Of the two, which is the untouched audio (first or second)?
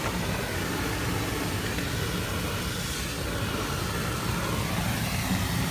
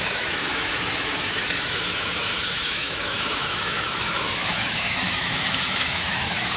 first